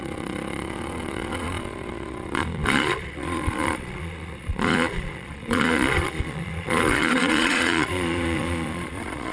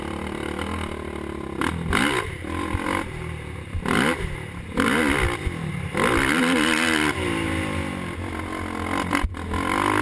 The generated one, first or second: first